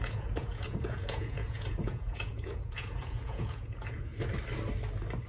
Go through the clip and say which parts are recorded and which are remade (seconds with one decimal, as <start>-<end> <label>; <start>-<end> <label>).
0.0-4.1 remade; 4.1-5.3 recorded